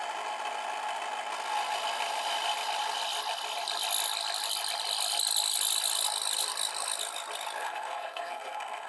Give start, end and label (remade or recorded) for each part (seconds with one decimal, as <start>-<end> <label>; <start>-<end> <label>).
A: 0.0-7.6 recorded; 7.6-8.9 remade